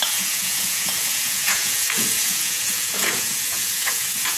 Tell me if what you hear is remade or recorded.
remade